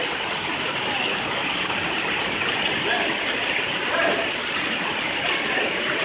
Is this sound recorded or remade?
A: recorded